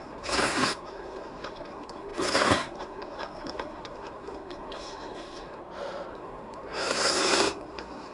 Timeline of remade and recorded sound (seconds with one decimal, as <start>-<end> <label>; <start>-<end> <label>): 0.0-5.6 remade; 5.6-6.1 recorded; 6.1-8.1 remade